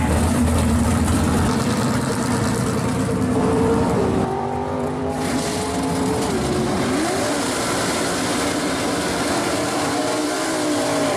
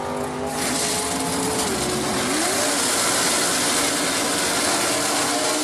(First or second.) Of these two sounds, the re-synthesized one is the first